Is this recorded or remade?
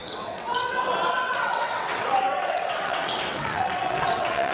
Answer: remade